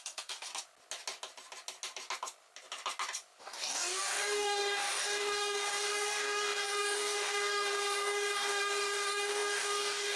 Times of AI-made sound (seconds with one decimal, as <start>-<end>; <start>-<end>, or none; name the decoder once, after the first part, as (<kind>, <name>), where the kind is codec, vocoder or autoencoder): 0.0-0.5 (codec, DAC); 3.4-10.2